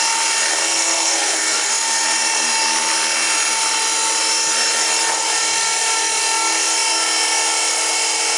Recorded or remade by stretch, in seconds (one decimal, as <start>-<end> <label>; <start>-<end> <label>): 0.0-0.6 recorded; 0.6-1.7 remade; 1.7-8.4 recorded